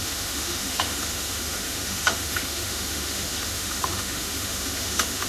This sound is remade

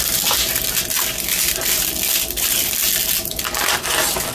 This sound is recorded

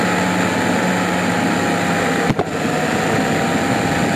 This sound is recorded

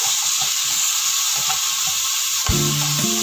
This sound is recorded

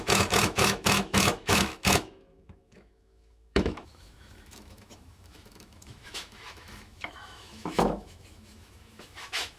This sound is remade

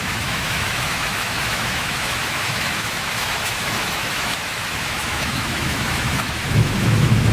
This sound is remade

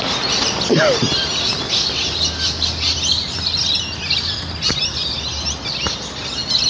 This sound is recorded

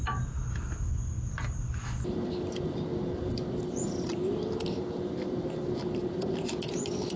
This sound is recorded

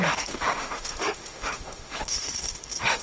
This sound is remade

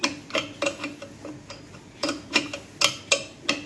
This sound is recorded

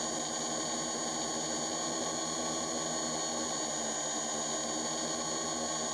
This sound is recorded